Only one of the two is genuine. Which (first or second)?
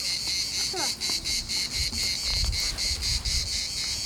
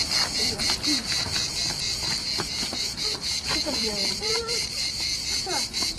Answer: first